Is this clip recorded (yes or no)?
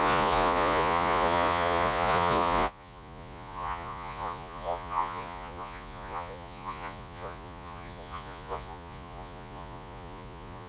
no